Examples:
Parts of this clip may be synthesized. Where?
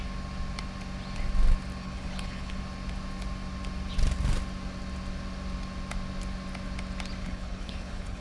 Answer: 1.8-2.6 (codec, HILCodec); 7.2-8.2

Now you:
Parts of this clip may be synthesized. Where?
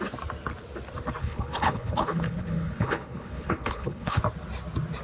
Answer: 1.2-4.2 (codec, HILCodec)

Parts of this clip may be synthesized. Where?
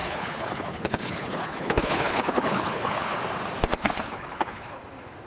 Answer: 0.0-3.2 (codec, HILCodec); 3.8-4.8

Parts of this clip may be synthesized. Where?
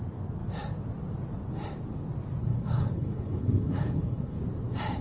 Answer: 2.4-4.4 (codec, HILCodec)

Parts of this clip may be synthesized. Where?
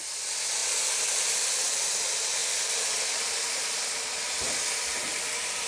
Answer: none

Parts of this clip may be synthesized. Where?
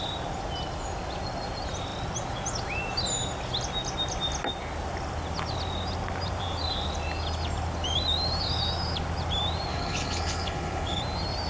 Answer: 9.7-11.0 (codec, HILCodec)